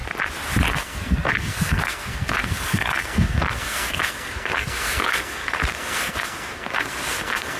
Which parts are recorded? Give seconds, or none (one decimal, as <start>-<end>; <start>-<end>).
0.0-0.7